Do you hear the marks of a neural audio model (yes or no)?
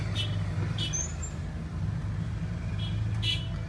no